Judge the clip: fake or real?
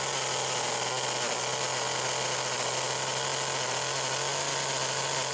real